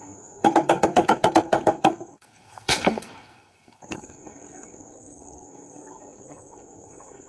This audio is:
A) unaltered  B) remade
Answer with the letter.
B